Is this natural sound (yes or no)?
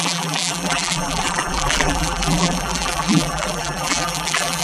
no